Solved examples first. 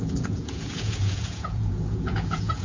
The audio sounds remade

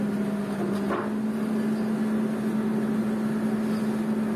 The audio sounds recorded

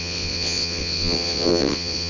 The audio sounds remade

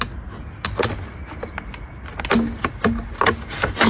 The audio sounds recorded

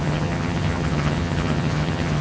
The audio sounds remade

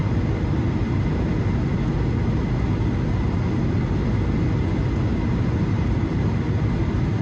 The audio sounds recorded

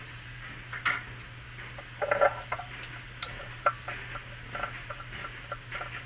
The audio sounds recorded